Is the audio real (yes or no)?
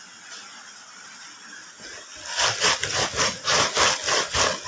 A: yes